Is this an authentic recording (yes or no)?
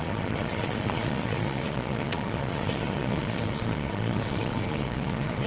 no